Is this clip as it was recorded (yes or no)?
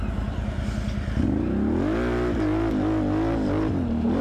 yes